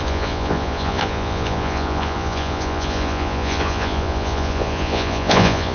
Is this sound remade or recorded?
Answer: remade